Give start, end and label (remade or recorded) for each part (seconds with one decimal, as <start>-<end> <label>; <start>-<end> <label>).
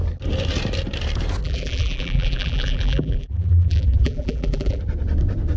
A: 0.0-1.4 recorded; 1.4-4.8 remade; 4.8-5.6 recorded